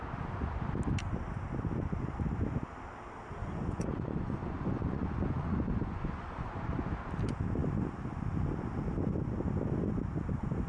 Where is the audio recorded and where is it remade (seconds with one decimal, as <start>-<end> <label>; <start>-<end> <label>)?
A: 0.0-3.4 recorded; 3.4-6.5 remade; 6.5-10.7 recorded